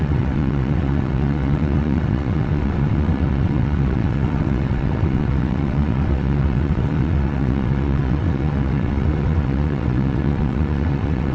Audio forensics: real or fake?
fake